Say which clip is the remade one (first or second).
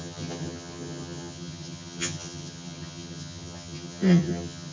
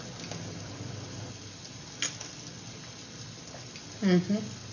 first